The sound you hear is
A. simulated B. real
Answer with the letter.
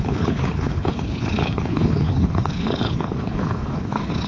A